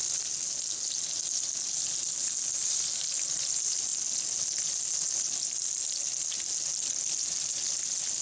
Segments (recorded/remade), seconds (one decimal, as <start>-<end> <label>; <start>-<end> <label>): 0.0-8.2 recorded